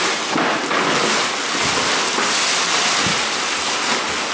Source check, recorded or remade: recorded